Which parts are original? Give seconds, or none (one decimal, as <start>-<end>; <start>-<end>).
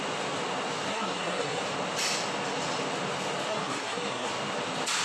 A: 0.0-0.9; 1.6-3.5; 4.3-5.0